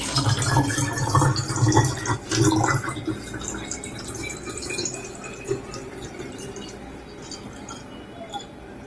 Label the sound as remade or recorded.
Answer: recorded